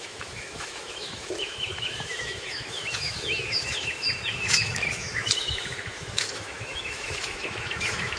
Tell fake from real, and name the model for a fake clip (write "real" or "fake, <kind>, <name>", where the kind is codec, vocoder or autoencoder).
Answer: fake, autoencoder, DAC-VAE